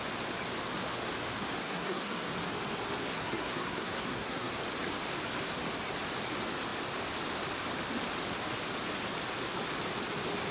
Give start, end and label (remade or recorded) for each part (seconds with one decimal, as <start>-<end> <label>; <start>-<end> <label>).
0.0-1.6 recorded; 1.6-2.3 remade; 2.3-3.1 recorded; 3.1-4.6 remade; 4.6-10.5 recorded